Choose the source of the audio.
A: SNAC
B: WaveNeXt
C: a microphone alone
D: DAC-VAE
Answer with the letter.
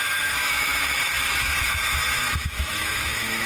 D